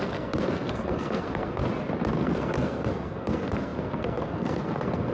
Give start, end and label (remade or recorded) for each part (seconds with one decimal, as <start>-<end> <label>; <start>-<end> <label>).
0.0-1.6 remade; 1.6-2.1 recorded; 2.1-5.1 remade